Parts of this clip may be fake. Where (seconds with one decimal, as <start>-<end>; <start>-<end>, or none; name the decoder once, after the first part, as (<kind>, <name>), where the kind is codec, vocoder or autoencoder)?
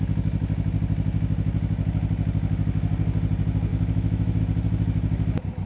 3.7-4.4 (autoencoder, DAC-VAE)